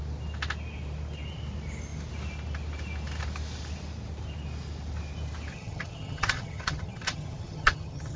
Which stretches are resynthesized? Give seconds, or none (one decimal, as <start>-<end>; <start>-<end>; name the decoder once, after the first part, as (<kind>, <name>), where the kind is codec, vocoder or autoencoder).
5.5-8.2 (vocoder, HiFi-GAN)